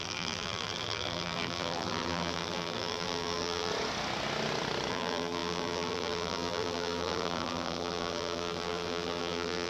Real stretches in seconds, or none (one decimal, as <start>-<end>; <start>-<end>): 3.7-4.9